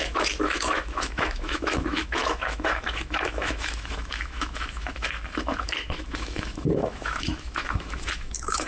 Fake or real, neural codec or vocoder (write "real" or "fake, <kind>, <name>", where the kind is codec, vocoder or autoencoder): fake, autoencoder, DAC-VAE